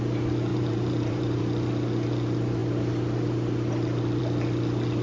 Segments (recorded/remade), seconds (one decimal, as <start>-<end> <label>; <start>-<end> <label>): 0.0-0.5 recorded; 0.5-1.4 remade; 1.4-5.0 recorded